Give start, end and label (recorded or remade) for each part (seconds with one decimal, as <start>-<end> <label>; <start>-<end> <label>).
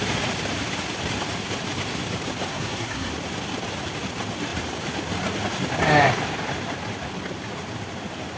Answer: 0.0-2.5 recorded; 2.5-3.1 remade; 3.1-8.4 recorded